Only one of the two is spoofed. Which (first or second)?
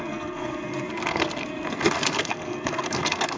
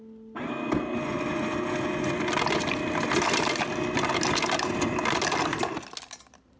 first